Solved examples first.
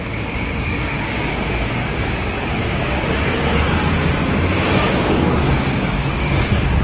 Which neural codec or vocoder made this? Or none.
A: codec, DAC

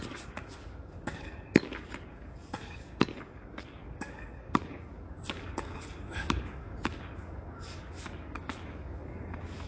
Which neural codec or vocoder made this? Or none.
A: codec, DAC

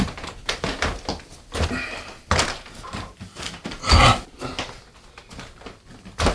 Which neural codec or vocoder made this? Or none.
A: none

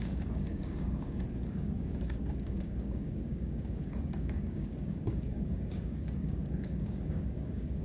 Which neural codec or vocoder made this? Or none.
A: codec, DAC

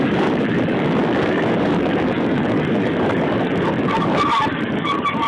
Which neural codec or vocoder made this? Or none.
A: codec, DAC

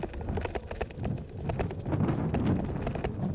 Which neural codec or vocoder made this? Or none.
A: none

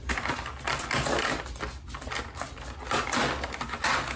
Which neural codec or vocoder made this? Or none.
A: none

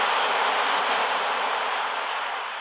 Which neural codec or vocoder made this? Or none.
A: none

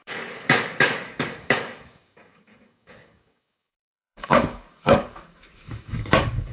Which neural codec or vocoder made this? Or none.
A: codec, DAC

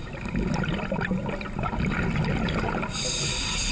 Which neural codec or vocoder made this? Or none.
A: none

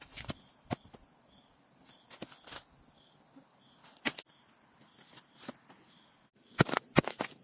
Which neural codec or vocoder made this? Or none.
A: none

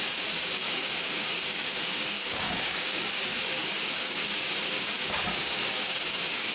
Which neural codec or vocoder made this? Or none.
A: codec, DAC